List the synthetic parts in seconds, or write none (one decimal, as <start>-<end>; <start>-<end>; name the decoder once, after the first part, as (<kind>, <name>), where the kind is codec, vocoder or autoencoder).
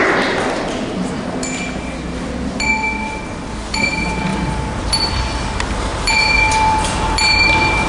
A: 4.3-4.9 (vocoder, BigVGAN v2); 5.9-7.9